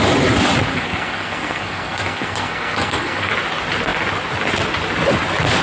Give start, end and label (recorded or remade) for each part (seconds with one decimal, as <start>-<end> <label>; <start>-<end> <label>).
0.0-0.7 recorded; 0.7-3.3 remade; 3.3-5.6 recorded